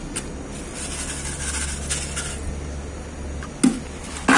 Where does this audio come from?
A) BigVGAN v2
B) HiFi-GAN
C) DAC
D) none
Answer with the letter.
D